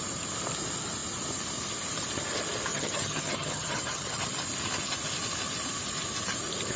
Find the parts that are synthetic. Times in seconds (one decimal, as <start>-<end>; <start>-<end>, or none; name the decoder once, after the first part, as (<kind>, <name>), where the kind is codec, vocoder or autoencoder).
2.7-4.2 (vocoder, HiFi-GAN)